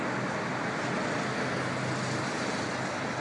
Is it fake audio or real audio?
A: real